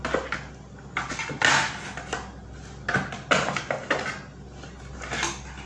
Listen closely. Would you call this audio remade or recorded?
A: recorded